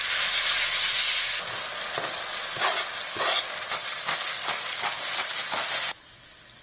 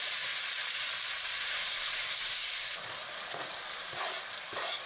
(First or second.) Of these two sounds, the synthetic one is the second